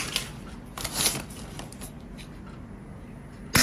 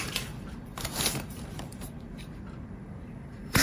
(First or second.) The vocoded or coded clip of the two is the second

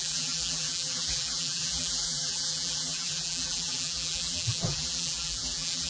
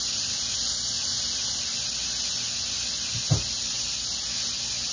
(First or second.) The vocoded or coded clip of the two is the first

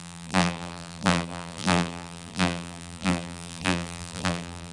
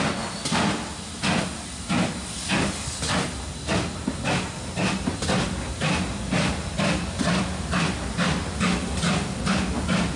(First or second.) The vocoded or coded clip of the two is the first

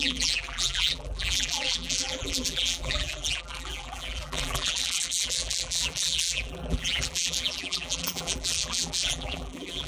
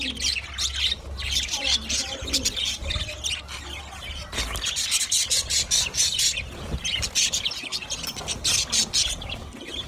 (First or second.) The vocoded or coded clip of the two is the first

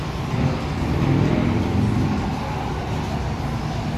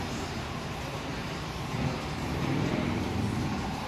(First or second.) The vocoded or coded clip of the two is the second